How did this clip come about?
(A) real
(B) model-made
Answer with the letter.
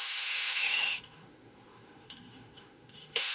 B